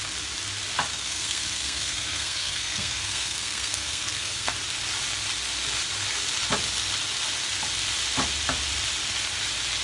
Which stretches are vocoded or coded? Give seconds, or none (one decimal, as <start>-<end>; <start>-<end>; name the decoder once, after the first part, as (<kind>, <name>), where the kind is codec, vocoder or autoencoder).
0.9-4.5 (codec, SNAC)

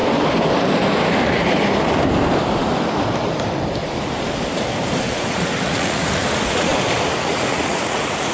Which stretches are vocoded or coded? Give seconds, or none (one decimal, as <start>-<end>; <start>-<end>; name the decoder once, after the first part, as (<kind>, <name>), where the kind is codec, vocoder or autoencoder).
5.0-6.7 (vocoder, Vocos); 7.2-8.3

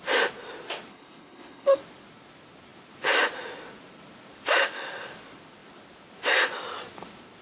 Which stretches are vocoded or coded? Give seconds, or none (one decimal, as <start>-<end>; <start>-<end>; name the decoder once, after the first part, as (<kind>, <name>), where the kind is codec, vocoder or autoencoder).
0.9-1.8 (codec, HILCodec)

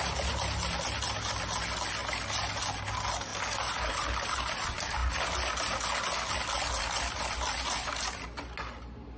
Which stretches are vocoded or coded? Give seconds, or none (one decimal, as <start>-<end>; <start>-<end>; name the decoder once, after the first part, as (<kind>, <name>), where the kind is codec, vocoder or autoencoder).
none

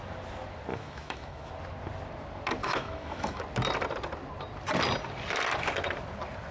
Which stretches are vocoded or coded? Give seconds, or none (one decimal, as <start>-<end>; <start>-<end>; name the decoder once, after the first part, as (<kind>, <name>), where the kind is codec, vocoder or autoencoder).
0.7-1.5 (autoencoder, DAC-VAE); 2.6-3.4

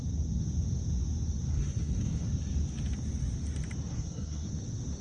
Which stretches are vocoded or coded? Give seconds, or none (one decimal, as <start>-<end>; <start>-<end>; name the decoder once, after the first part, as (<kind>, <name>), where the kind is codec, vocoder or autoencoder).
1.5-2.3 (codec, SNAC); 3.9-4.5

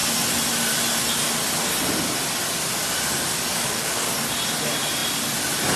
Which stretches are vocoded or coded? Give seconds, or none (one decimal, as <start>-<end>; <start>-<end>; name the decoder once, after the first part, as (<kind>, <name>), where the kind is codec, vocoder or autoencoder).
3.5-4.1 (codec, DAC)

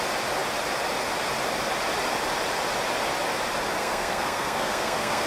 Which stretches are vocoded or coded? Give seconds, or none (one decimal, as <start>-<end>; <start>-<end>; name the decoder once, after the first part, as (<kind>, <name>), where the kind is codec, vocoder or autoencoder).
3.8-5.3 (codec, SNAC)